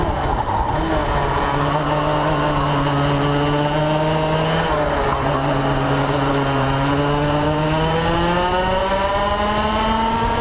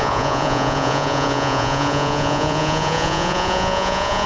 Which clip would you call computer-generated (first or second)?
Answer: second